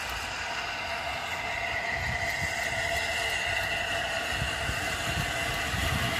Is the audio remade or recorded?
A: recorded